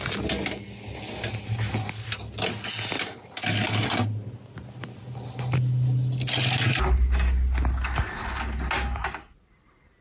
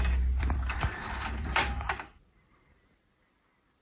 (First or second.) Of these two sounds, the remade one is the second